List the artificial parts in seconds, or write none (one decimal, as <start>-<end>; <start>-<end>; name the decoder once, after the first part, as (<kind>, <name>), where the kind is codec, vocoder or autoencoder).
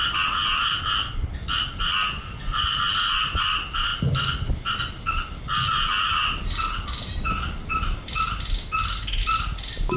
none